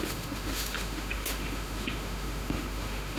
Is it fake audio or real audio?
fake